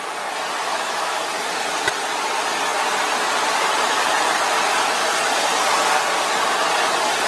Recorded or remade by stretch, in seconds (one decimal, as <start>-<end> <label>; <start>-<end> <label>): 0.0-0.7 recorded; 0.7-1.2 remade; 1.2-7.3 recorded